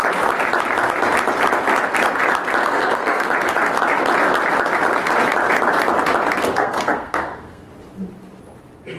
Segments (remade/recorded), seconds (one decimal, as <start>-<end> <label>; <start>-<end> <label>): 0.0-2.6 recorded; 2.6-3.3 remade; 3.3-6.4 recorded; 6.4-7.7 remade; 7.7-9.0 recorded